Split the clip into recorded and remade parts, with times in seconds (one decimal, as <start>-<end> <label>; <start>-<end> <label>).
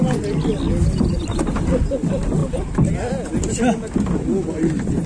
0.0-2.4 recorded; 2.4-3.1 remade; 3.1-5.1 recorded